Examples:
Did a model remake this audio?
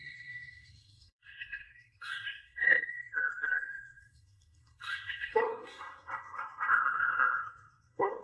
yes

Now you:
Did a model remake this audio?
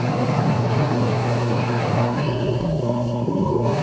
yes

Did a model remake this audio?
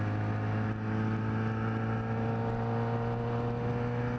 no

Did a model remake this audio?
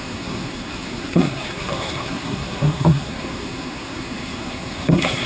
yes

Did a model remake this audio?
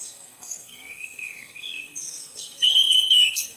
yes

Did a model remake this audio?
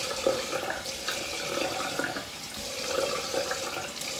no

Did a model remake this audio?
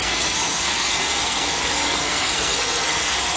yes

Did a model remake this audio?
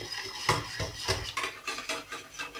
no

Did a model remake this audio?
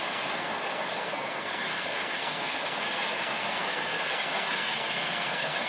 yes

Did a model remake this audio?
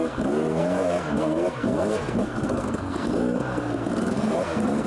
yes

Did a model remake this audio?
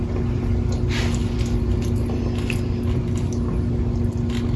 no